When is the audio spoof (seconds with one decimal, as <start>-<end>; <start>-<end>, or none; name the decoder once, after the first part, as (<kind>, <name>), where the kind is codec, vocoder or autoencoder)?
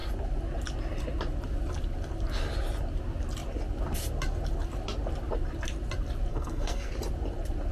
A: 6.3-6.9 (codec, SNAC)